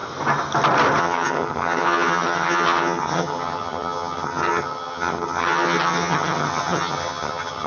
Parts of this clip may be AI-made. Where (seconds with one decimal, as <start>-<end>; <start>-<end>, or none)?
1.0-7.7